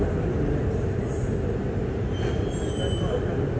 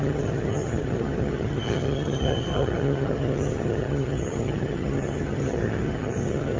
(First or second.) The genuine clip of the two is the first